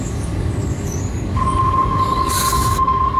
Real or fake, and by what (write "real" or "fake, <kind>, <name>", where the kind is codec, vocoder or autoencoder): fake, codec, DAC